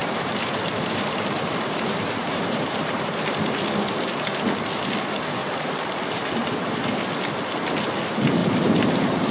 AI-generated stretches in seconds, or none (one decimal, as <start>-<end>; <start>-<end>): 0.0-3.1; 5.4-7.0; 8.4-9.3